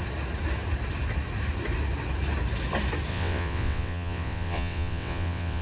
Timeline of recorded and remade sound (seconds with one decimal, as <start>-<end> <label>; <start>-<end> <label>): 0.0-3.1 recorded; 3.1-5.6 remade